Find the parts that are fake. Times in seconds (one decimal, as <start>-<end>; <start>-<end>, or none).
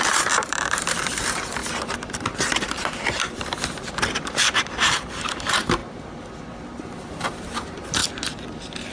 0.0-1.6; 2.6-5.8; 6.8-8.0